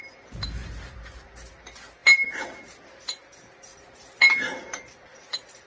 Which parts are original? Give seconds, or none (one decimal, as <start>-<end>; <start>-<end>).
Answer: 0.0-5.7